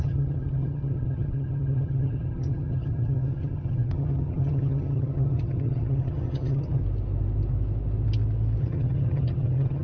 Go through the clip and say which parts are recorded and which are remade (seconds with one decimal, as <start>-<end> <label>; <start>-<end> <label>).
0.0-6.8 remade; 6.8-8.6 recorded; 8.6-9.8 remade